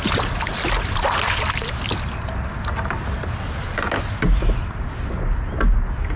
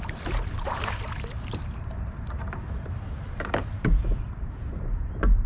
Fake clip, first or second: second